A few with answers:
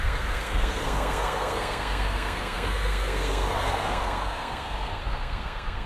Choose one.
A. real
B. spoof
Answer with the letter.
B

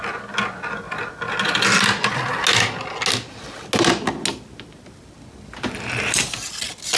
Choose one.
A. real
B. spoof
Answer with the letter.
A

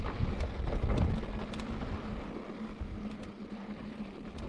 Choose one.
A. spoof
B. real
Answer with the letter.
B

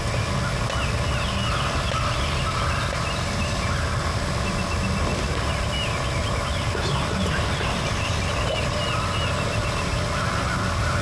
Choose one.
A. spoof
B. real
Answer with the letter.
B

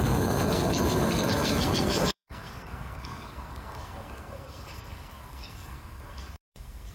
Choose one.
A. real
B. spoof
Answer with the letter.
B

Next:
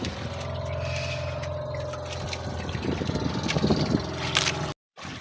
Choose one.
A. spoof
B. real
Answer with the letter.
B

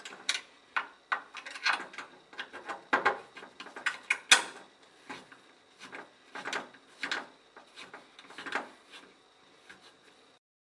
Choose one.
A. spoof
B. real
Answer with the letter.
B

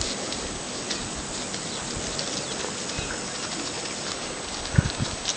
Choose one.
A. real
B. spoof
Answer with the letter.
A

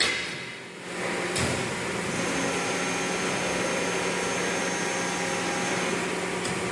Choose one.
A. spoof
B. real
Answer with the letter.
B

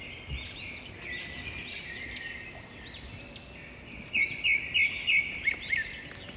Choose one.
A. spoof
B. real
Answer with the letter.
B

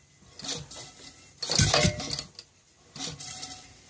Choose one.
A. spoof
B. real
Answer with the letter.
B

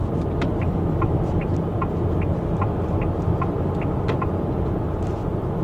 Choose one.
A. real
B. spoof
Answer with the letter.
A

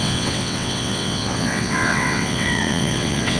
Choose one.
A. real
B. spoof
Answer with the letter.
B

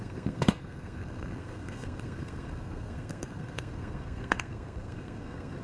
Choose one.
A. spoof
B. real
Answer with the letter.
A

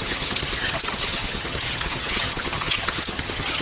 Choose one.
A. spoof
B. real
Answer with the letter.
A